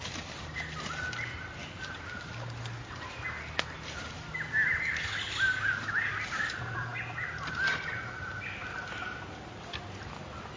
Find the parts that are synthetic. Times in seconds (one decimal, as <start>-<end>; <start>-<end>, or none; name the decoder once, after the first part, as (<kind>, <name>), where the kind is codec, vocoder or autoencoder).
none